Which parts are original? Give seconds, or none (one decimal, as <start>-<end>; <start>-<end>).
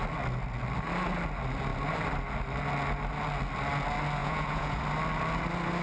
0.0-4.2; 4.8-5.8